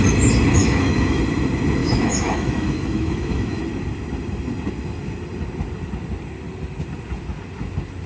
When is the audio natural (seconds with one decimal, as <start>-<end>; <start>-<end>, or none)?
0.0-0.6; 1.2-1.8; 3.6-8.1